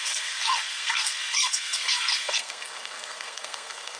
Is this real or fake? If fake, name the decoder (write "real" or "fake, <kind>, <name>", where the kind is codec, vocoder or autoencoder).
fake, codec, SNAC